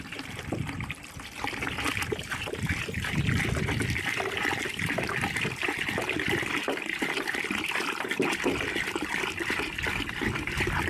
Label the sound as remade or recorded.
remade